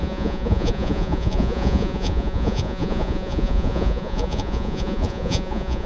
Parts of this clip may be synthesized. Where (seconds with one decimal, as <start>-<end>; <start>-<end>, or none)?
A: 0.0-5.9